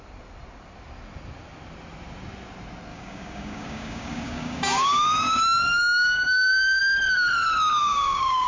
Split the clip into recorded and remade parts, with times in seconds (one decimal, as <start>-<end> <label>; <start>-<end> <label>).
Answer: 0.0-2.9 recorded; 2.9-6.8 remade; 6.8-7.8 recorded; 7.8-8.5 remade